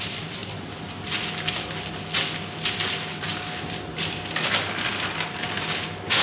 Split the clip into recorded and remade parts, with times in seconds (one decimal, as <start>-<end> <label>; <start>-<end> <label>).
0.0-6.2 recorded